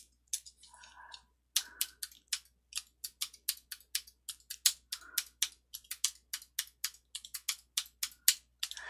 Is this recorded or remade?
recorded